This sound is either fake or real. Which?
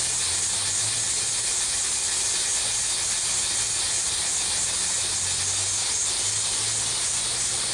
real